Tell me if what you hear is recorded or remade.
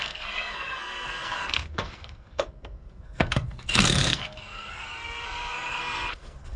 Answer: remade